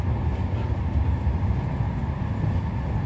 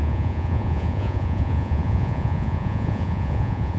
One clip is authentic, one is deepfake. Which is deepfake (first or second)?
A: second